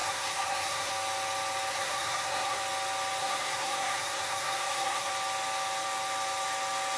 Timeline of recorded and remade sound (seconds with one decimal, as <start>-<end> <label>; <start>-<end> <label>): 0.0-0.9 remade; 0.9-1.7 recorded; 1.7-2.6 remade; 2.6-3.2 recorded; 3.2-5.1 remade; 5.1-7.0 recorded